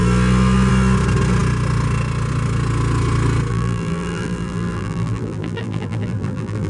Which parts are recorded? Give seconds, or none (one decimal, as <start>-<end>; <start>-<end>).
0.0-3.5